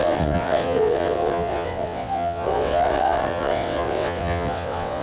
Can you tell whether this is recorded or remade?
remade